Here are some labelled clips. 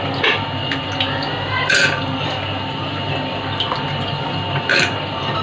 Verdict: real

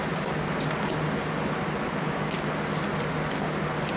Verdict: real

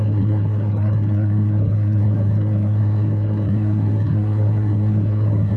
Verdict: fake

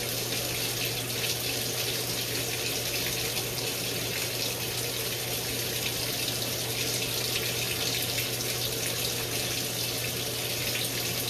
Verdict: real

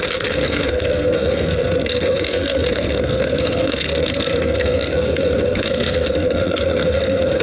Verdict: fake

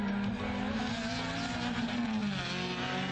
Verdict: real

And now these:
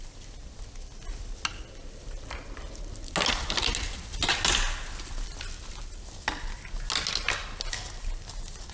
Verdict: real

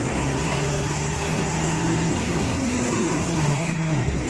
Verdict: fake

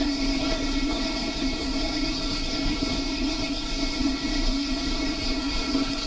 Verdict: fake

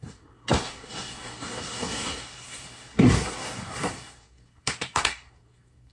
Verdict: fake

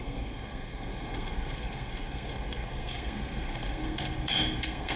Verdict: fake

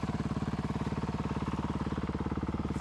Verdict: real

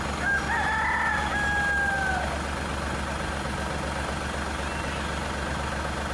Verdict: real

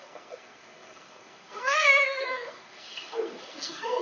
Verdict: fake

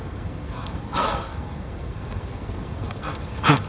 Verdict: fake